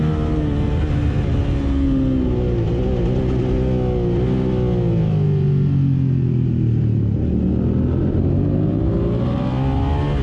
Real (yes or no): yes